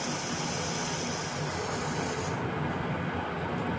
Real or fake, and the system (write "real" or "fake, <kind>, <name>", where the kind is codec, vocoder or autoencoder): real